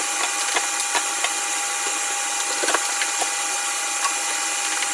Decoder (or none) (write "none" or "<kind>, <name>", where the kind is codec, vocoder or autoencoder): none